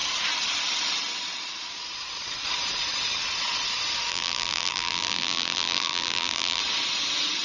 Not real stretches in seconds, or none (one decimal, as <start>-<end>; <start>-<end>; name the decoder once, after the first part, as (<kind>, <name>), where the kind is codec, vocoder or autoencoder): 4.1-6.6 (vocoder, BigVGAN v2)